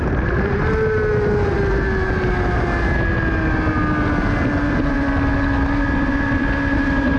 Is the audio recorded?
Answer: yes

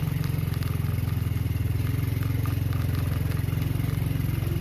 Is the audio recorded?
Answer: yes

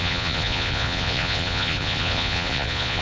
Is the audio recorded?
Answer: no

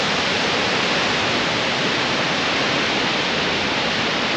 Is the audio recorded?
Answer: yes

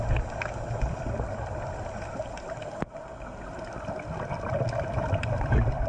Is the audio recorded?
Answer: yes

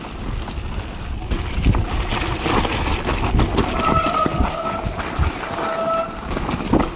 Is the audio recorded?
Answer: yes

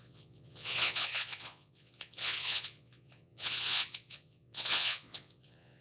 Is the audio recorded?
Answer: no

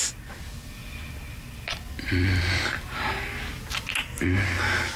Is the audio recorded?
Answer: yes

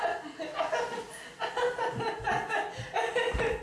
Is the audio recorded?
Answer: yes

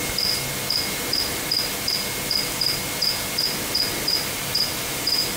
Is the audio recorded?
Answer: yes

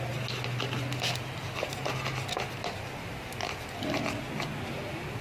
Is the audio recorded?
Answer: yes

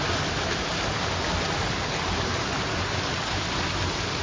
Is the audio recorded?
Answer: yes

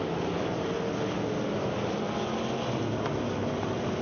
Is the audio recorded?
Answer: yes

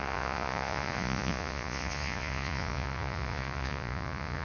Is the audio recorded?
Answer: no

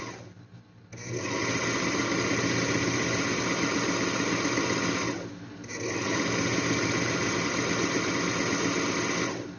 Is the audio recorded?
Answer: yes